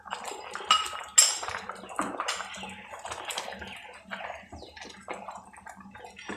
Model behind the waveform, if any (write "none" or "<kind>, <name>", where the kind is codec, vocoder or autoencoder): none